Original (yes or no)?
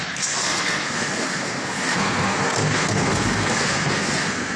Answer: no